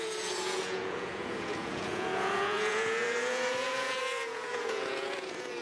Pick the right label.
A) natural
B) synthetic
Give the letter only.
B